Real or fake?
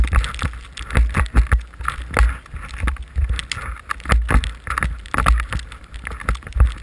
real